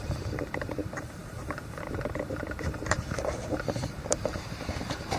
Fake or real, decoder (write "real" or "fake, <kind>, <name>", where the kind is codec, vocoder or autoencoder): fake, vocoder, BigVGAN v2